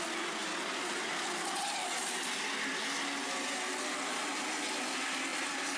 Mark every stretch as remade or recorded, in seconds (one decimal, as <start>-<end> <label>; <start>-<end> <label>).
0.0-5.8 recorded